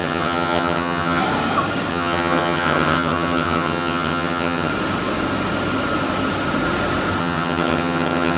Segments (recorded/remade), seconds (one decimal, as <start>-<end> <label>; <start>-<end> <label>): 0.0-1.2 remade; 1.2-1.9 recorded; 1.9-4.7 remade; 4.7-7.2 recorded; 7.2-8.4 remade